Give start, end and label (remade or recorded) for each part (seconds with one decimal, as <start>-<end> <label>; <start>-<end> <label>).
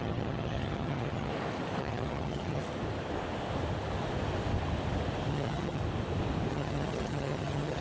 0.0-1.3 remade; 1.3-1.8 recorded; 1.8-2.6 remade; 2.6-5.3 recorded; 5.3-5.8 remade; 5.8-6.5 recorded; 6.5-7.8 remade